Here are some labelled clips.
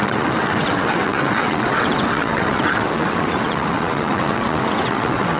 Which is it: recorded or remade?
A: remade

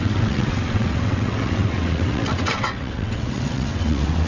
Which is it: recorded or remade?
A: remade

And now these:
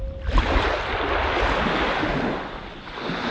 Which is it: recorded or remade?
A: recorded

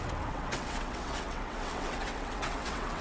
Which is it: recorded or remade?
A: remade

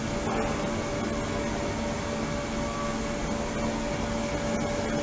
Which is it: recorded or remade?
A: recorded